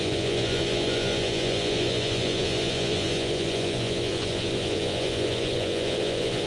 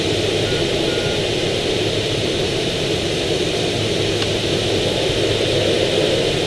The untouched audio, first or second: second